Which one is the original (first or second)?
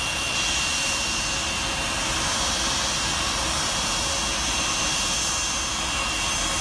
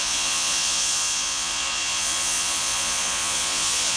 first